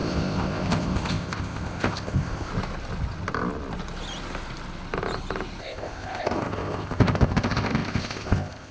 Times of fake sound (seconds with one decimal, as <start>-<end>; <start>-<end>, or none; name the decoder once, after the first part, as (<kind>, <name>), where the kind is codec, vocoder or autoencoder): 0.0-2.5 (codec, ZipCodec); 5.6-8.7